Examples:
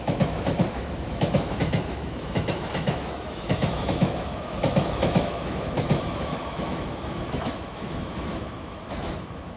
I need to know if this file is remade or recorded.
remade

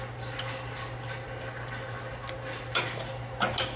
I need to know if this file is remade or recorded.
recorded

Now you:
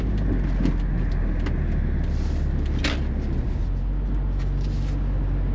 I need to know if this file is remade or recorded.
recorded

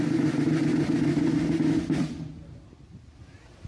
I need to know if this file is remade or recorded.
recorded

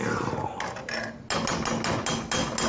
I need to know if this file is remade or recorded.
recorded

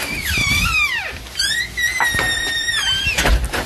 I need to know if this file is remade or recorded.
recorded